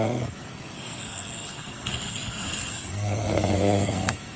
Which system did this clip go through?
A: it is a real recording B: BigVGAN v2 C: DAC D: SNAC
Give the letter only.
D